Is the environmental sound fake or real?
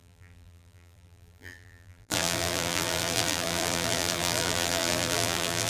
fake